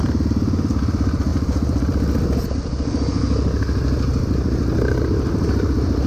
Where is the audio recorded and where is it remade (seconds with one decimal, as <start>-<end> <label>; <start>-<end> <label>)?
0.0-6.1 recorded